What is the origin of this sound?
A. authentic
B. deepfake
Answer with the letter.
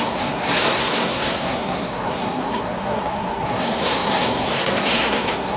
B